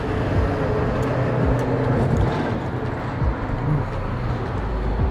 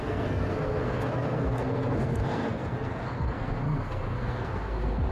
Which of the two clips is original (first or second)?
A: first